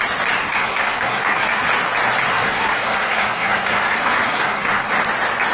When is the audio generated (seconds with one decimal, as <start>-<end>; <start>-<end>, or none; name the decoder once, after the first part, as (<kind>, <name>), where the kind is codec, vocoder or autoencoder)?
0.4-1.6 (codec, SNAC); 2.3-4.9